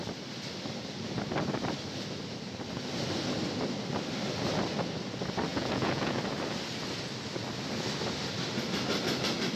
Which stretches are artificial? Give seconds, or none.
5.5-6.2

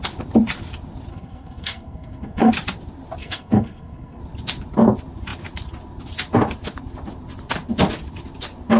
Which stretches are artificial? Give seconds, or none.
1.1-2.5; 3.2-4.2

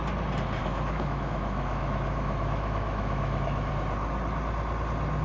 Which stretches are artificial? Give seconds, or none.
0.6-3.7

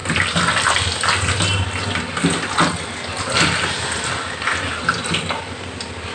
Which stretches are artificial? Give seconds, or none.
none

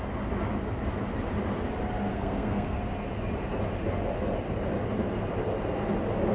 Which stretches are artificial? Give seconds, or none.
2.1-2.8

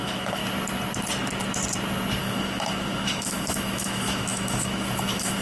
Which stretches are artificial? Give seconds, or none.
0.0-0.4; 2.2-5.4